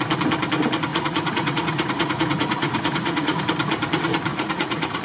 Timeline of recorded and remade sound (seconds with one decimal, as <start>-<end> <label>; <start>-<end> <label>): 0.0-0.9 recorded; 0.9-3.4 remade; 3.4-4.3 recorded; 4.3-5.0 remade